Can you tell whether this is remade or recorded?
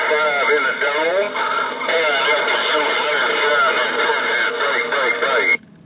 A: recorded